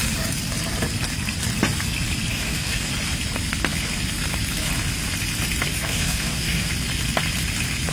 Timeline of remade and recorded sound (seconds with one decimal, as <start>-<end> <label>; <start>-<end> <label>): 0.0-2.3 recorded; 2.3-2.9 remade; 2.9-5.7 recorded; 5.7-6.7 remade; 6.7-7.9 recorded